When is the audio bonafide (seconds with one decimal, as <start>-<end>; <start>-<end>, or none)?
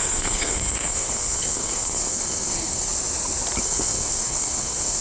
2.9-3.6